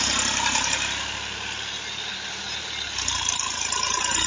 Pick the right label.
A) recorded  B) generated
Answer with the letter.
A